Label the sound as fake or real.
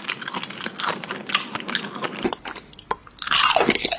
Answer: real